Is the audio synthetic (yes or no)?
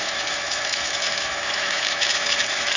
yes